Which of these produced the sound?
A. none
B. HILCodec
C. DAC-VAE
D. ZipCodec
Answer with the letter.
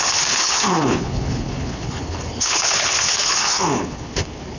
B